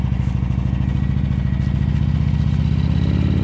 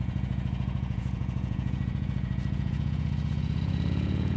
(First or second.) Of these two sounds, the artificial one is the second